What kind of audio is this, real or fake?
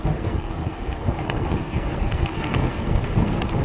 fake